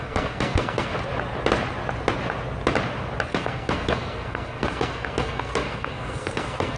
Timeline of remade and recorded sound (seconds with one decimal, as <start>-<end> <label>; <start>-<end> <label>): 0.0-0.9 remade; 0.9-3.3 recorded; 3.3-6.8 remade